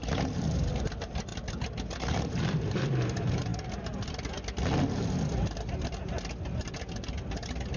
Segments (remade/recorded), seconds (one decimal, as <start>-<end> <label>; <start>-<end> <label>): 0.0-1.3 remade; 1.3-2.0 recorded; 2.0-3.5 remade; 3.5-7.8 recorded